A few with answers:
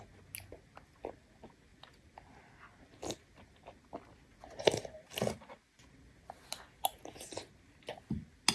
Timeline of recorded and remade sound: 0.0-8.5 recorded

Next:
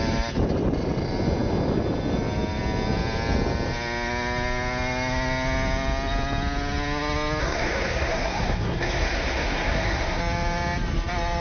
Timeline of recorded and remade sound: 0.0-7.4 recorded; 7.4-10.2 remade; 10.2-11.4 recorded

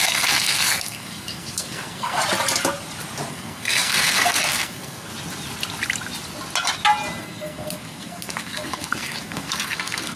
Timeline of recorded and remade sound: 0.0-2.2 remade; 2.2-3.3 recorded; 3.3-5.1 remade; 5.1-7.2 recorded; 7.2-10.2 remade

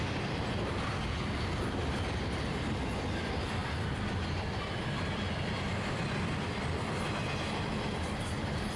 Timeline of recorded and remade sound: 0.0-8.8 recorded

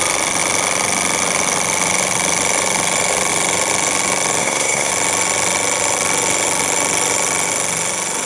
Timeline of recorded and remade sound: 0.0-4.4 recorded; 4.4-4.9 remade; 4.9-8.3 recorded